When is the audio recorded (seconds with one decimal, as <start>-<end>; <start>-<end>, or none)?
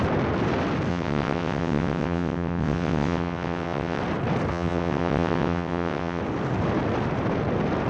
0.0-0.9; 4.0-4.5; 6.2-7.9